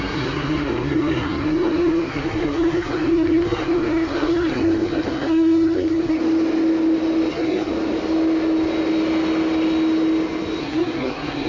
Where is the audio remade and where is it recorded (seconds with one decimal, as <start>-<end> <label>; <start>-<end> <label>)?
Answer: 0.0-6.2 remade; 6.2-7.3 recorded; 7.3-7.7 remade; 7.7-10.6 recorded; 10.6-11.5 remade